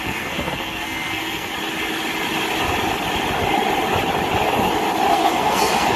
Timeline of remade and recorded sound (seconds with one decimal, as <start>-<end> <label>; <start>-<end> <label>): 0.0-1.5 remade; 1.5-5.1 recorded; 5.1-6.0 remade